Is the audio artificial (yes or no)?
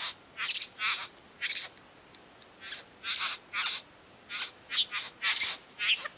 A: no